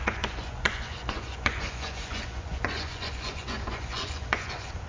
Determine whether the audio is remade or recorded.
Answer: remade